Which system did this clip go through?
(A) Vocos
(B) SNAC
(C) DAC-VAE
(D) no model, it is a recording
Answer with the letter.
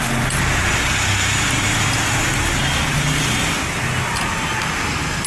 D